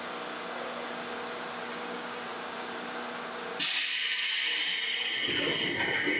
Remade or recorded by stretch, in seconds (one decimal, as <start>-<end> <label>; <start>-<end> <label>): 0.0-1.7 recorded; 1.7-2.2 remade; 2.2-6.2 recorded

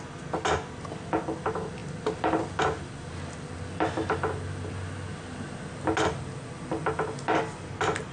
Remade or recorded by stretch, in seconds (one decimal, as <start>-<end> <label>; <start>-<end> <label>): 0.0-8.1 recorded